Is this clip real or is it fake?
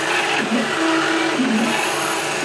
real